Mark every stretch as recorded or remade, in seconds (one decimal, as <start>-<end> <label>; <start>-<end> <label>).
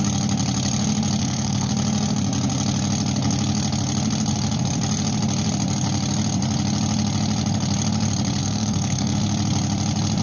0.0-1.2 recorded; 1.2-1.7 remade; 1.7-8.4 recorded; 8.4-9.2 remade; 9.2-10.2 recorded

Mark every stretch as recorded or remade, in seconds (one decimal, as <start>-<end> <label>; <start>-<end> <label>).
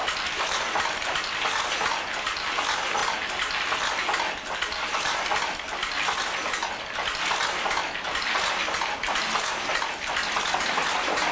0.0-11.3 recorded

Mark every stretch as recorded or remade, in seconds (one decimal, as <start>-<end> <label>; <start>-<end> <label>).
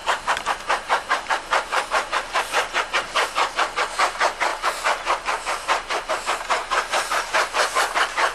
0.0-2.4 remade; 2.4-4.5 recorded; 4.5-6.1 remade; 6.1-6.6 recorded; 6.6-7.1 remade; 7.1-8.3 recorded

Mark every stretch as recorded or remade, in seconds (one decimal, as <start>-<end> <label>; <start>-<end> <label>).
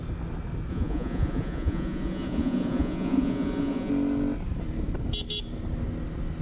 0.0-0.7 recorded; 0.7-3.9 remade; 3.9-6.4 recorded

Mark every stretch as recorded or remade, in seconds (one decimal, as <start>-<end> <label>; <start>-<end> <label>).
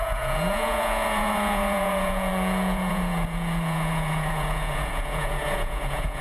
0.0-6.2 remade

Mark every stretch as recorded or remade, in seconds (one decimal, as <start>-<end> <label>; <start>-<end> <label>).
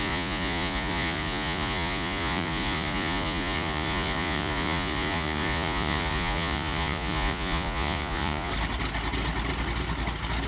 0.0-8.5 remade; 8.5-10.5 recorded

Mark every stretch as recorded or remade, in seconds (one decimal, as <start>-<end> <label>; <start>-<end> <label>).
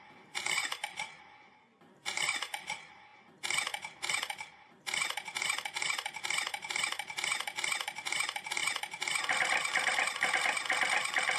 0.0-0.7 remade; 0.7-1.5 recorded; 1.5-3.1 remade; 3.1-4.1 recorded; 4.1-11.4 remade